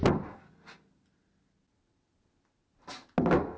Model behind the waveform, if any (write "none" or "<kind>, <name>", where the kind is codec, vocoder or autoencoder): none